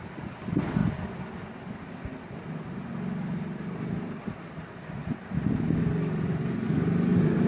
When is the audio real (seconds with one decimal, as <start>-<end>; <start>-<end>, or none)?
0.0-7.5

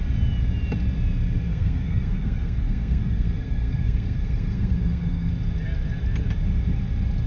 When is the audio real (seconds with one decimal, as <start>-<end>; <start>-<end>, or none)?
0.0-1.5; 5.3-7.3

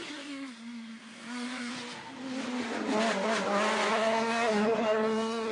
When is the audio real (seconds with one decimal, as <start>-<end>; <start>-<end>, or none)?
1.7-3.9

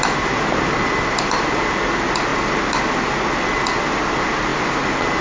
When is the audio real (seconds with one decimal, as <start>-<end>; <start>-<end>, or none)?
0.0-5.2

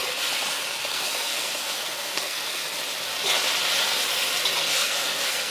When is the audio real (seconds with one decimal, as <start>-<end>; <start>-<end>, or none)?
0.0-0.8; 2.6-4.6